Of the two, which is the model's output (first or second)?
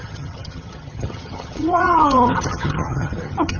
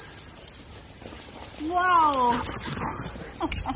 first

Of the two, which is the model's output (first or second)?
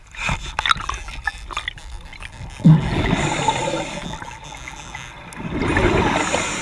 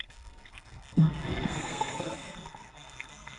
second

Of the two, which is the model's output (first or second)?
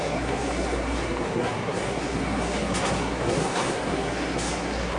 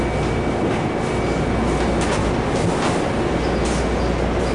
first